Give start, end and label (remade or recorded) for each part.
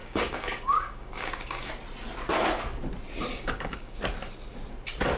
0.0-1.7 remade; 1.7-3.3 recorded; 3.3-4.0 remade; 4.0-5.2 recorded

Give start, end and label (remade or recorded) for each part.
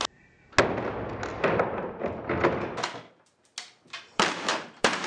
0.0-3.1 recorded; 3.1-3.5 remade; 3.5-4.0 recorded; 4.0-5.1 remade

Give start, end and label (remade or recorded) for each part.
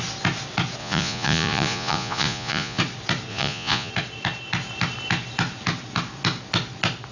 0.0-0.8 recorded; 0.8-2.8 remade; 2.8-3.3 recorded; 3.3-3.9 remade; 3.9-7.1 recorded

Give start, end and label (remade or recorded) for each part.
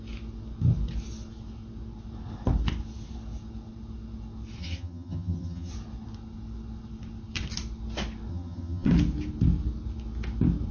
0.0-4.6 recorded; 4.6-5.7 remade; 5.7-8.3 recorded; 8.3-8.9 remade; 8.9-10.7 recorded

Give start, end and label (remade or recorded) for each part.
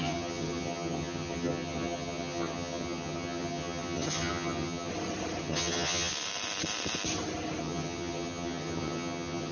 0.0-4.9 remade; 4.9-5.4 recorded; 5.4-6.1 remade; 6.1-7.6 recorded; 7.6-9.5 remade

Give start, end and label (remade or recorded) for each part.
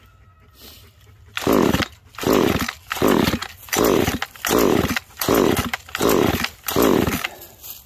0.0-7.9 recorded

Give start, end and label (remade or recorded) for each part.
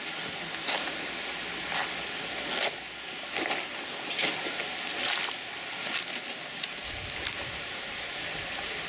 0.0-8.9 recorded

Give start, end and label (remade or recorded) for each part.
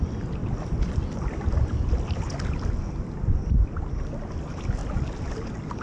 0.0-5.8 recorded